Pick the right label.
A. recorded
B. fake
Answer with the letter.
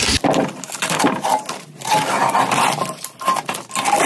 A